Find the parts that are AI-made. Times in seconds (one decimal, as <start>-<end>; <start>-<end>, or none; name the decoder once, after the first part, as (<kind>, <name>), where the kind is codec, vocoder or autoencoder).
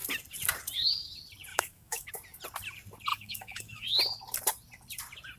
1.5-2.1 (autoencoder, DAC-VAE); 3.1-4.0